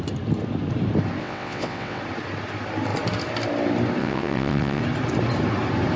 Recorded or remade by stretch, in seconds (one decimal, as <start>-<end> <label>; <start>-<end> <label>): 0.0-1.2 recorded; 1.2-2.0 remade; 2.0-4.0 recorded; 4.0-4.8 remade; 4.8-6.0 recorded